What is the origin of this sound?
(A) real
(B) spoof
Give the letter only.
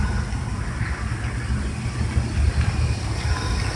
A